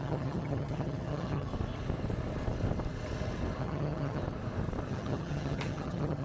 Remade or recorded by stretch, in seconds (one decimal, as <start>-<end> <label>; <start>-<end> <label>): 0.0-1.5 remade; 1.5-3.6 recorded; 3.6-4.2 remade; 4.2-4.9 recorded; 4.9-6.2 remade